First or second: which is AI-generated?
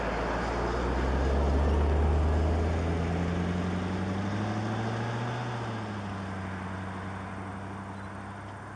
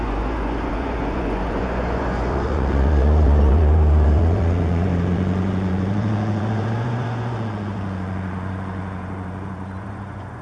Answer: second